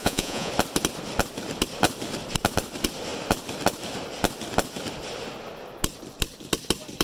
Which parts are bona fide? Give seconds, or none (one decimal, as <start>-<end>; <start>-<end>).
0.5-7.0